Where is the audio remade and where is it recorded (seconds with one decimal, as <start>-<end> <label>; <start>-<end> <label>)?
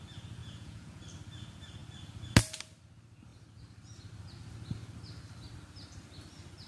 0.0-0.4 recorded; 0.4-1.0 remade; 1.0-6.7 recorded